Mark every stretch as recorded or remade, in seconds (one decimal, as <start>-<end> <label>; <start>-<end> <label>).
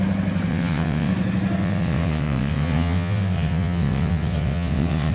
0.0-0.5 recorded; 0.5-1.1 remade; 1.1-1.6 recorded; 1.6-5.1 remade